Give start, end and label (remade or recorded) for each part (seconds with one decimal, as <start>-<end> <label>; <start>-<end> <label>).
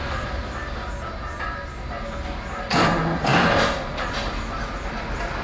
0.0-5.4 recorded